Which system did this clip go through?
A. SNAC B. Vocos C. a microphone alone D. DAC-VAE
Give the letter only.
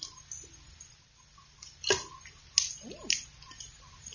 C